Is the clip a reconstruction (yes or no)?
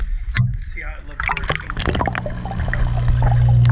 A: no